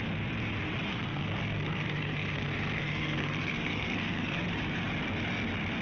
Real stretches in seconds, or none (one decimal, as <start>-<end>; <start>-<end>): 0.0-0.9; 4.4-5.8